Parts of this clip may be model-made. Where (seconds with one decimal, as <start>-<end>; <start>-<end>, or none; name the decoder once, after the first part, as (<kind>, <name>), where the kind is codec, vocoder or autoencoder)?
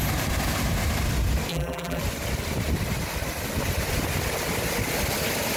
1.5-2.0 (vocoder, BigVGAN v2)